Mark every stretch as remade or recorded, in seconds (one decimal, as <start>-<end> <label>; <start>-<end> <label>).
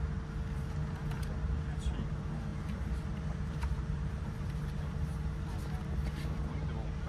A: 0.0-2.5 recorded; 2.5-4.8 remade; 4.8-7.1 recorded